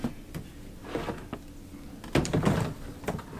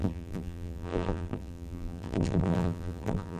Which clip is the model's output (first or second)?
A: second